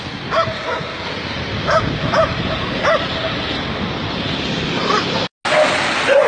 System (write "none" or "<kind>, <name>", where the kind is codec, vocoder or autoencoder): none